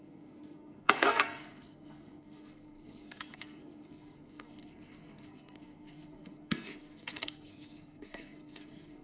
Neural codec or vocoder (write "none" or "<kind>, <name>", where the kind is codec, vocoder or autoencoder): codec, SNAC